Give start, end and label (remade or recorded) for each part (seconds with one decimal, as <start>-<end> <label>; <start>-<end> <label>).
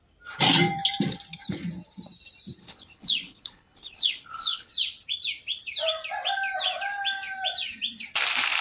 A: 0.0-2.6 recorded; 2.6-4.7 remade; 4.7-8.6 recorded